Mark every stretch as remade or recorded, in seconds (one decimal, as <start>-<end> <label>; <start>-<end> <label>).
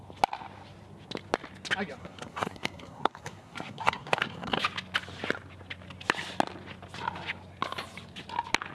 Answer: 0.0-2.0 recorded; 2.0-4.6 remade; 4.6-8.7 recorded